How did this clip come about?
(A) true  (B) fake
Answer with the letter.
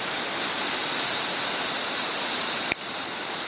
A